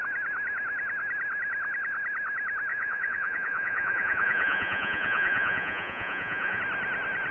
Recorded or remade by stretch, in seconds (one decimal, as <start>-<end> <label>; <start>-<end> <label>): 0.0-2.7 recorded; 2.7-6.6 remade; 6.6-7.3 recorded